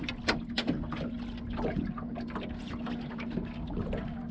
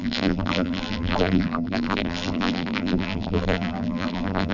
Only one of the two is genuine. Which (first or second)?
first